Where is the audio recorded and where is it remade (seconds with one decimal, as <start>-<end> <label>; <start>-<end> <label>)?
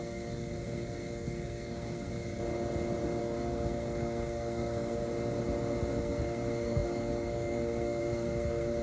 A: 0.0-2.1 remade; 2.1-3.2 recorded; 3.2-5.0 remade; 5.0-6.0 recorded; 6.0-8.8 remade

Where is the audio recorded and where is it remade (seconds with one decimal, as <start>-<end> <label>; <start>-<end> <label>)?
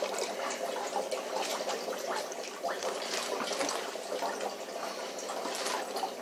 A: 0.0-6.2 recorded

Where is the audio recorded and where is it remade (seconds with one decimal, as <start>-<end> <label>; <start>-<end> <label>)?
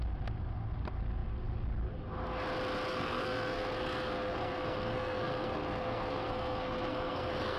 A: 0.0-2.9 recorded; 2.9-7.6 remade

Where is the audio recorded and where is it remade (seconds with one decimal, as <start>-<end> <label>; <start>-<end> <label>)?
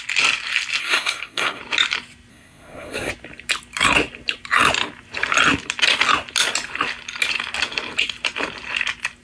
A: 0.0-0.8 recorded; 0.8-1.6 remade; 1.6-2.3 recorded; 2.3-3.1 remade; 3.1-9.2 recorded